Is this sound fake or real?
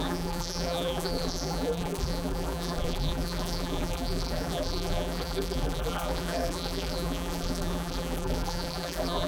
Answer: fake